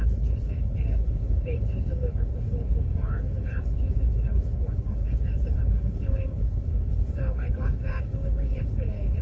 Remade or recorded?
remade